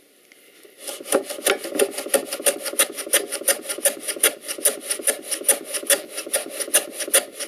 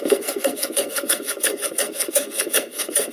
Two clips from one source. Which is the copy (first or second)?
second